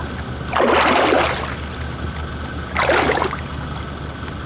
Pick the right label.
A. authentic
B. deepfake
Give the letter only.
A